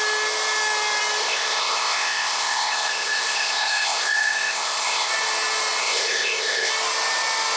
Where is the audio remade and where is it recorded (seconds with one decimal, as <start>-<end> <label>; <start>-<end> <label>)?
0.0-1.2 recorded; 1.2-5.1 remade; 5.1-5.8 recorded; 5.8-6.7 remade; 6.7-7.6 recorded

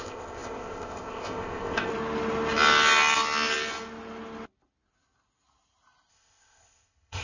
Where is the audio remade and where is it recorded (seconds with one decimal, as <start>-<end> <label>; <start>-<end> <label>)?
0.0-1.9 remade; 1.9-6.1 recorded; 6.1-7.2 remade

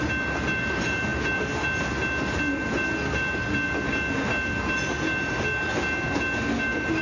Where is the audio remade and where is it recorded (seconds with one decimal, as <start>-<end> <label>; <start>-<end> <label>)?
0.0-7.0 recorded

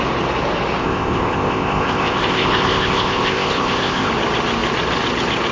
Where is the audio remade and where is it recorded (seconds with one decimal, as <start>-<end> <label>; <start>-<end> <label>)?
0.0-0.8 recorded; 0.8-4.1 remade; 4.1-5.5 recorded

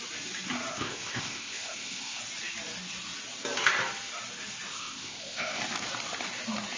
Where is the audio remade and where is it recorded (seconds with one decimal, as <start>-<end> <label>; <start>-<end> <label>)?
0.0-0.7 recorded; 0.7-2.2 remade; 2.2-4.7 recorded; 4.7-5.6 remade; 5.6-6.8 recorded

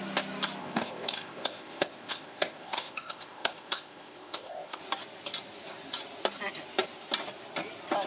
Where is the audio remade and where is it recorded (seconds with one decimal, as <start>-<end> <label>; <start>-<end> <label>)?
0.0-0.6 recorded; 0.6-4.8 remade; 4.8-8.1 recorded

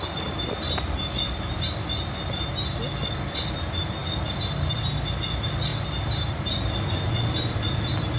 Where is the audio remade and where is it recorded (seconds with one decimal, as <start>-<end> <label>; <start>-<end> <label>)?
0.0-8.2 recorded

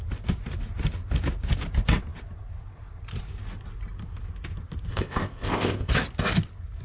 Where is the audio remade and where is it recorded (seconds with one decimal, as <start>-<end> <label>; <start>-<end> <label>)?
0.0-4.9 recorded; 4.9-5.9 remade; 5.9-6.8 recorded